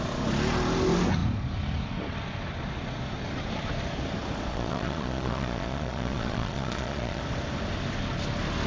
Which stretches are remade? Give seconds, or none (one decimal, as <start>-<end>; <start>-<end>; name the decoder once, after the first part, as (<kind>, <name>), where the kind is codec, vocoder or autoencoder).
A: 4.5-7.2 (vocoder, Vocos)